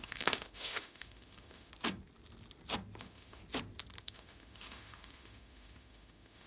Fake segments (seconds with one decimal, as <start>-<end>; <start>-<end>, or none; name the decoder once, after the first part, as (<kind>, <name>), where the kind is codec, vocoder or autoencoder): 0.0-1.7 (autoencoder, DAC-VAE); 3.0-3.4; 4.0-6.5